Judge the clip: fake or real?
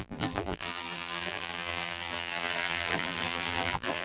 fake